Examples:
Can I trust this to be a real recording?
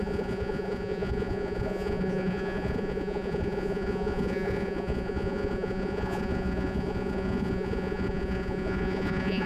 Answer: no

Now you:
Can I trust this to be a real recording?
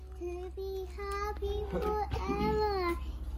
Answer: yes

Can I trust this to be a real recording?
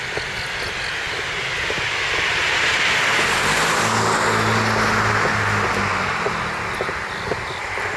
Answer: yes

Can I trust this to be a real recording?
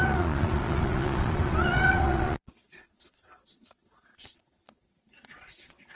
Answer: no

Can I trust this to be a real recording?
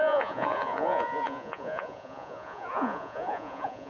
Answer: no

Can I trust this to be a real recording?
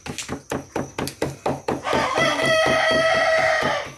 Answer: yes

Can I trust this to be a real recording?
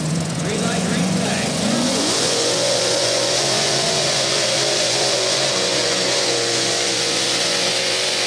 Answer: no